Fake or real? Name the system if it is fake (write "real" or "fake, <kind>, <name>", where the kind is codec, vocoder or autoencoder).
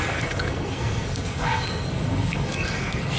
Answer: fake, codec, SNAC